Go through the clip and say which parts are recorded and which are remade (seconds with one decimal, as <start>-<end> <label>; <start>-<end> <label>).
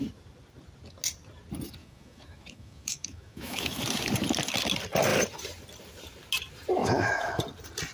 0.0-1.8 recorded; 1.8-3.8 remade; 3.8-6.8 recorded; 6.8-7.4 remade; 7.4-7.9 recorded